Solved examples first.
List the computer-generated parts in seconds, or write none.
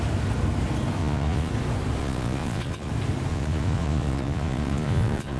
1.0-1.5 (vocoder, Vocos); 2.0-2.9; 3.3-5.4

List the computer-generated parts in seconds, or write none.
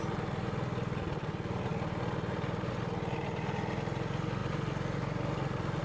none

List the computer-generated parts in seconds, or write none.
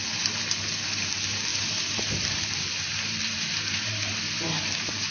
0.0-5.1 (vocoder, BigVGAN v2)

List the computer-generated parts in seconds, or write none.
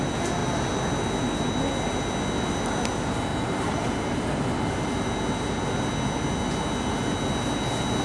3.3-3.9 (vocoder, BigVGAN v2)